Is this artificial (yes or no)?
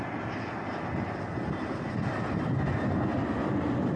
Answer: no